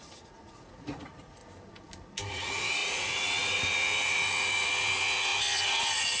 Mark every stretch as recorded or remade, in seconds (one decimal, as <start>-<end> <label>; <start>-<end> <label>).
0.0-1.4 remade; 1.4-2.3 recorded; 2.3-6.2 remade